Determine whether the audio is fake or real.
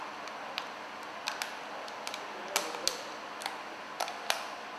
real